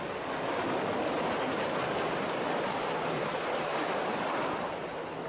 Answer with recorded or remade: recorded